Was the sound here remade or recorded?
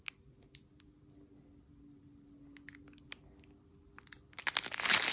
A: recorded